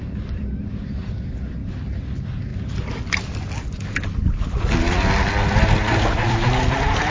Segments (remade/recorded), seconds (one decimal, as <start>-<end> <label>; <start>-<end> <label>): 0.0-7.1 recorded